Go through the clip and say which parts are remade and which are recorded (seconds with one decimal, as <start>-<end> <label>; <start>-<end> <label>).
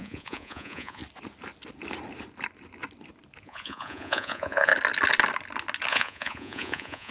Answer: 0.0-1.0 remade; 1.0-3.4 recorded; 3.4-4.7 remade; 4.7-5.9 recorded; 5.9-7.1 remade